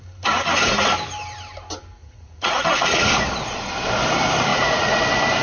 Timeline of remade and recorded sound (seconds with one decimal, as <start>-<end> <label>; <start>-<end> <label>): 0.0-2.0 recorded; 2.0-3.1 remade; 3.1-4.5 recorded; 4.5-5.0 remade; 5.0-5.4 recorded